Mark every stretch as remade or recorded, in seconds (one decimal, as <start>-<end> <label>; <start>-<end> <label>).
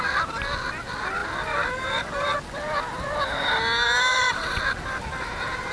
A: 0.0-4.1 recorded; 4.1-4.6 remade; 4.6-5.7 recorded